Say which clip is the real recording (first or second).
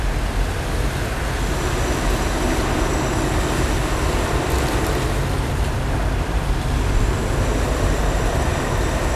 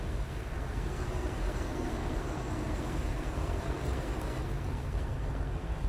first